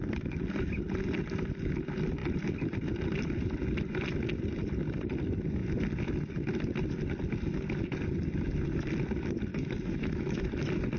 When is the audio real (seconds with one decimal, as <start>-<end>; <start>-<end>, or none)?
0.0-9.5; 10.4-11.0